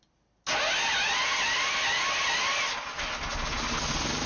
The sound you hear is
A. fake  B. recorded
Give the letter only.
B